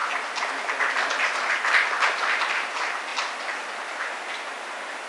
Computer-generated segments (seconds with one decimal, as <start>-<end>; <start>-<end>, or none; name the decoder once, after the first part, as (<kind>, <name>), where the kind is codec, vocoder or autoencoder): none